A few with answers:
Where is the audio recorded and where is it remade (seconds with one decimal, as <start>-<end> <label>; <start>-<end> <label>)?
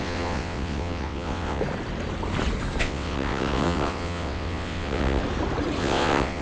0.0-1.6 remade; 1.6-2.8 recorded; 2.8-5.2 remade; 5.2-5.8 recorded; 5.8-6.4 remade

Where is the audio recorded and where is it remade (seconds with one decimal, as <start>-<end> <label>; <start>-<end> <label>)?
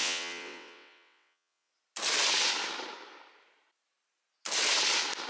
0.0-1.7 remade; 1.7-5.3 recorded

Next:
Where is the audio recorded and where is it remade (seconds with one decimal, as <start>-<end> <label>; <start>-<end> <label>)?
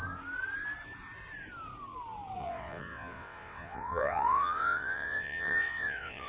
0.0-2.4 recorded; 2.4-6.3 remade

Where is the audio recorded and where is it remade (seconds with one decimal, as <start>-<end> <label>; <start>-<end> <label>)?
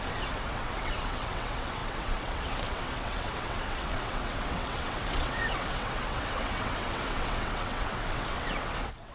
0.0-9.1 remade